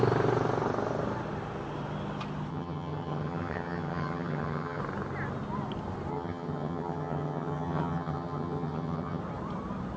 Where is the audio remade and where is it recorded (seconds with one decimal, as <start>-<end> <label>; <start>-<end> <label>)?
0.0-2.5 recorded; 2.5-4.8 remade; 4.8-6.1 recorded; 6.1-9.2 remade; 9.2-10.0 recorded